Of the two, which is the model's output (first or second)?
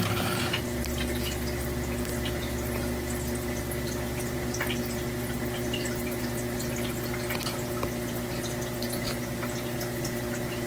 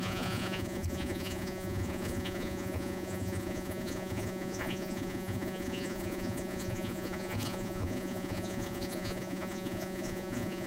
second